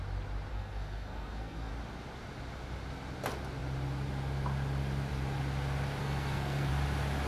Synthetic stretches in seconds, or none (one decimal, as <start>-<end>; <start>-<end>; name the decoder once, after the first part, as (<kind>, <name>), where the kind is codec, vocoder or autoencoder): 0.5-1.7 (codec, SNAC); 6.0-6.7